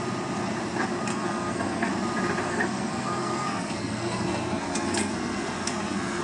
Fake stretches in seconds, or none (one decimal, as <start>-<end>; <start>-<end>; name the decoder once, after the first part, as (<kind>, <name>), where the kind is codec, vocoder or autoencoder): 1.1-1.9 (codec, SNAC); 2.4-6.2